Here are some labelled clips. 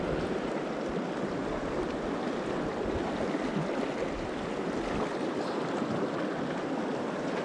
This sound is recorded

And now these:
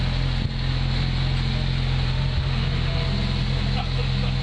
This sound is recorded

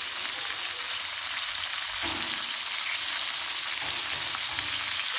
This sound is recorded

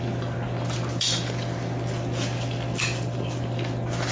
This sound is recorded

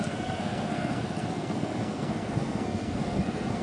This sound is remade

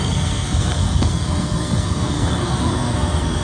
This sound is remade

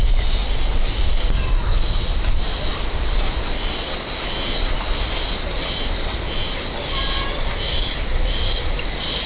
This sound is recorded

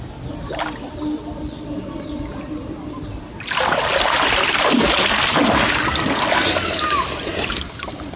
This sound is recorded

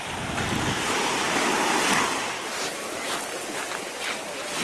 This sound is recorded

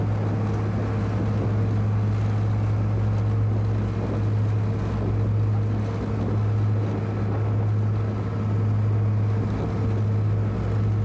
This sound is recorded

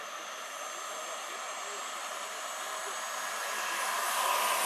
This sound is recorded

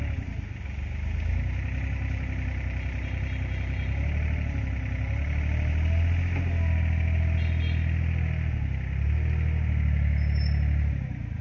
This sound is recorded